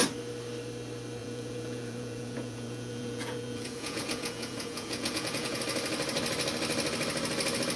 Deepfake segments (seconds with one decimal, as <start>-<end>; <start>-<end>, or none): 1.2-5.6